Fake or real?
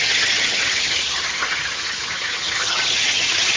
fake